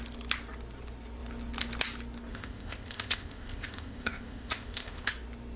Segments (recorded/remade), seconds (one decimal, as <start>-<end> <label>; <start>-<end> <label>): 0.0-2.3 recorded; 2.3-5.1 remade; 5.1-5.6 recorded